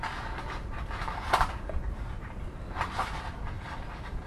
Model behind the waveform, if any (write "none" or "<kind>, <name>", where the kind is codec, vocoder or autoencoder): none